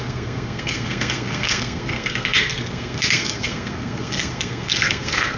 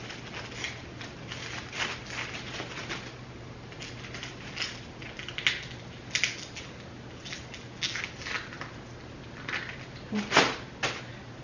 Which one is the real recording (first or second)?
second